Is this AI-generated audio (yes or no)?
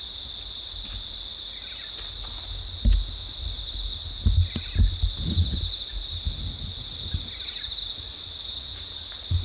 no